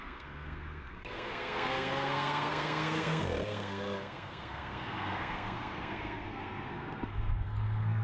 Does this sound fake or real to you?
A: fake